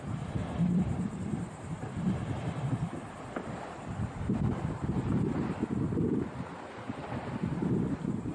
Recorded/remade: recorded